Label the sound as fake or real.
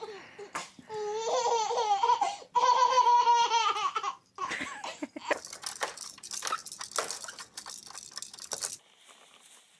real